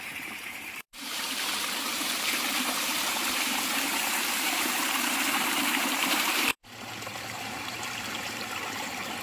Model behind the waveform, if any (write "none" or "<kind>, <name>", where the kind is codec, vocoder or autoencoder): vocoder, BigVGAN v2